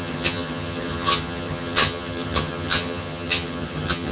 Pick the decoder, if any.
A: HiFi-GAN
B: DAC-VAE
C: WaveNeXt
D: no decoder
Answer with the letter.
A